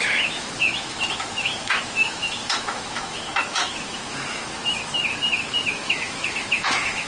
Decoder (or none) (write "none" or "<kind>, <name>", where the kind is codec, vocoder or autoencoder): autoencoder, DAC-VAE